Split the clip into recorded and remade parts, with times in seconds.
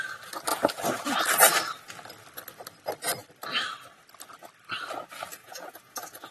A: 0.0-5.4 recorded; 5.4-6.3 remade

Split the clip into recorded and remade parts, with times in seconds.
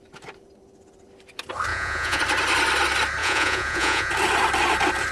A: 0.0-1.7 recorded; 1.7-2.2 remade; 2.2-3.2 recorded; 3.2-4.1 remade; 4.1-5.1 recorded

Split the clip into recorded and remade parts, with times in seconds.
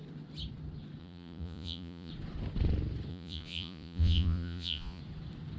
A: 0.0-1.0 recorded; 1.0-2.1 remade; 2.1-3.1 recorded; 3.1-5.0 remade; 5.0-5.6 recorded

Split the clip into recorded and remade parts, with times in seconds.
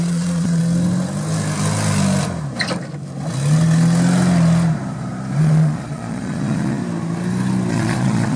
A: 0.0-0.6 remade; 0.6-5.4 recorded; 5.4-6.8 remade; 6.8-7.7 recorded; 7.7-8.4 remade